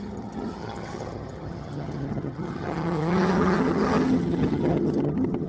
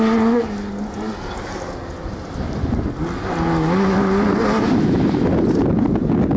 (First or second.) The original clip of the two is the second